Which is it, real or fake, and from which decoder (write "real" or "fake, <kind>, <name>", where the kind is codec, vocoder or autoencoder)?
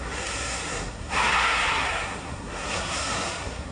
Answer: fake, codec, SNAC